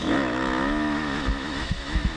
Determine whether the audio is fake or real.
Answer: fake